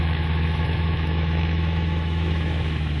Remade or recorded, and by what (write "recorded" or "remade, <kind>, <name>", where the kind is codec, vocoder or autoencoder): remade, autoencoder, DAC-VAE